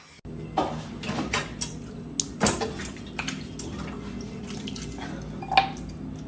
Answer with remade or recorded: recorded